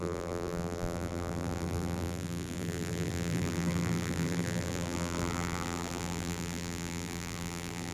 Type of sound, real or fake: fake